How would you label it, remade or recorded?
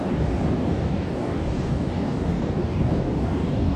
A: remade